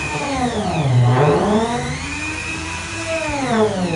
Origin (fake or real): fake